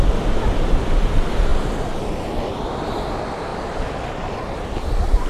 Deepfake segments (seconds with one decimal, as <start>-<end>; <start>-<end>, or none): 0.0-1.5; 2.5-5.3